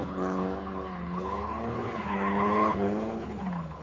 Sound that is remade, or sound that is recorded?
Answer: remade